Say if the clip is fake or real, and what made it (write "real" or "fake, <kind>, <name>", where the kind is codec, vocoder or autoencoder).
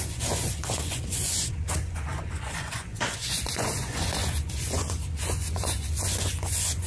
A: fake, vocoder, Vocos